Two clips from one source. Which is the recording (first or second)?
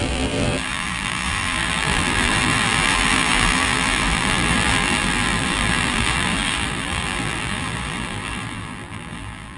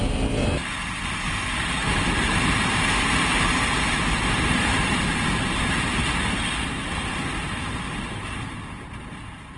second